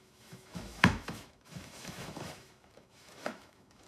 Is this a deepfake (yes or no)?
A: yes